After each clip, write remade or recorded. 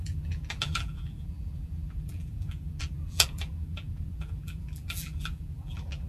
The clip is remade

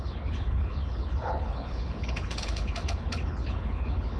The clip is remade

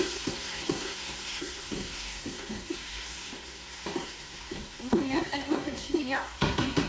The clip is remade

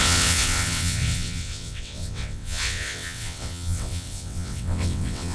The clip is remade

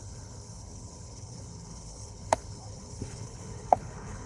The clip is remade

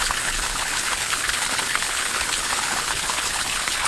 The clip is remade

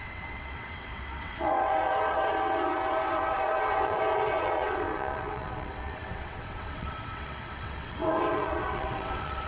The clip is remade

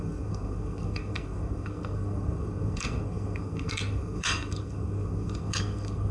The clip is remade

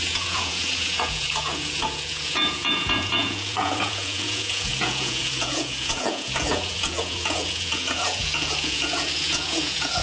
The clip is remade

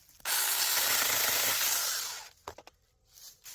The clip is recorded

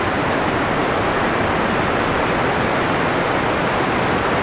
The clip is recorded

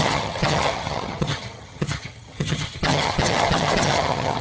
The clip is remade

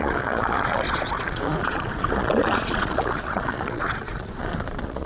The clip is remade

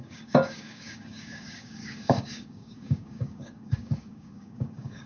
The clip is remade